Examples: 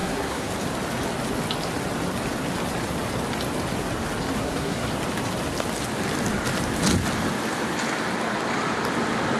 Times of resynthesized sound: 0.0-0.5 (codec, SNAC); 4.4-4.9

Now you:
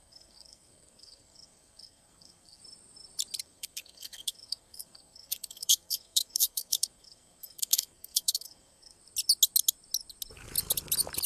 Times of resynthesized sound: 0.0-2.6 (codec, SNAC); 3.4-9.0